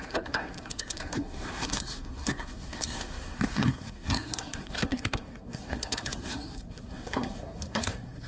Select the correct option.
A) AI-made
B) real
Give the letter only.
A